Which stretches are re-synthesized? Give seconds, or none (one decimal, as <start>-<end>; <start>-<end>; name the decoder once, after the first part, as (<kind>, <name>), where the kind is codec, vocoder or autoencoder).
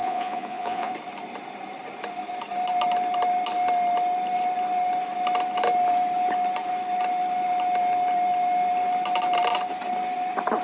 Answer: 0.0-0.9 (vocoder, Vocos)